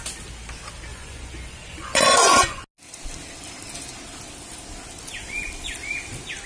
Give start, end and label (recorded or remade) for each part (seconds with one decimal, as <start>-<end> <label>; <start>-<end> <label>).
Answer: 0.0-0.9 recorded; 0.9-2.6 remade; 2.6-6.5 recorded